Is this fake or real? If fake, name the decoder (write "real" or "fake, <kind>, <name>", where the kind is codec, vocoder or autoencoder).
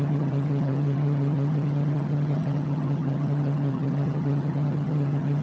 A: fake, vocoder, HiFi-GAN